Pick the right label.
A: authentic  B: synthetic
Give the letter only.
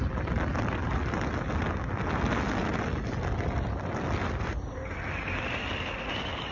A